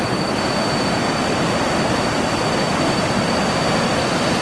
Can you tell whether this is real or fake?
real